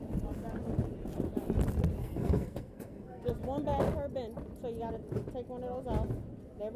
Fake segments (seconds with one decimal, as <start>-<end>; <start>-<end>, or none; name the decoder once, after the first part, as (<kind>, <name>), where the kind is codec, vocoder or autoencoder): 2.0-3.3 (codec, SNAC)